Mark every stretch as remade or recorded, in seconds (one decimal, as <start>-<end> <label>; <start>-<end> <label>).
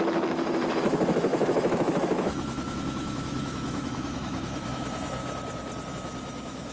0.0-5.2 remade; 5.2-5.9 recorded; 5.9-6.7 remade